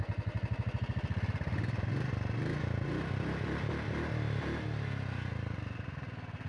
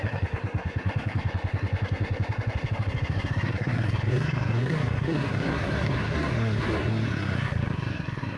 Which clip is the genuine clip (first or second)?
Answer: first